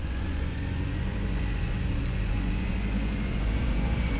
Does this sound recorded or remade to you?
remade